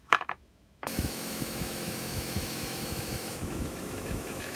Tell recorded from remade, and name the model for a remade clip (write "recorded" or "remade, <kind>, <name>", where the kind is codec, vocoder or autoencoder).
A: remade, autoencoder, DAC-VAE